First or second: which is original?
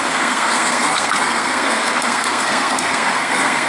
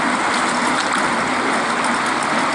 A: second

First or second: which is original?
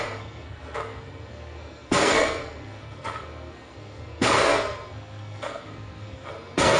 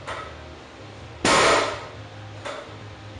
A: second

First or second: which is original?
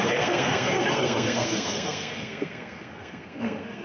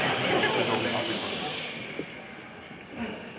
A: second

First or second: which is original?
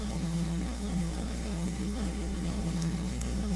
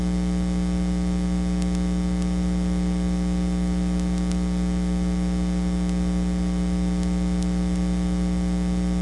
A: second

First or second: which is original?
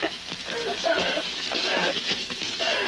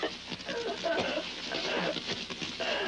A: second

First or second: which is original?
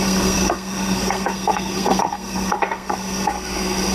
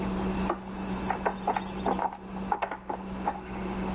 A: second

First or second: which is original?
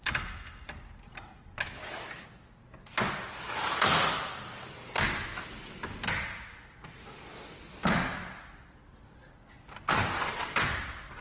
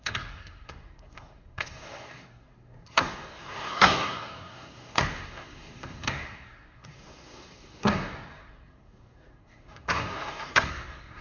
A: first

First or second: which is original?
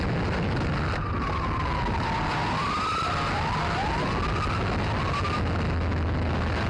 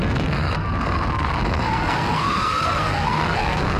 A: first